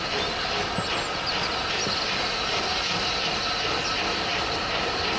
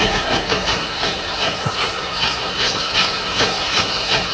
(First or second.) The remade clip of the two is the second